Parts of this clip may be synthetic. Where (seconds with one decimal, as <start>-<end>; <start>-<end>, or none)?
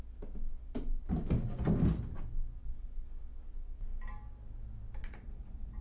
2.6-3.1; 5.0-5.8